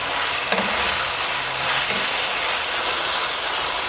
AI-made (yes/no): no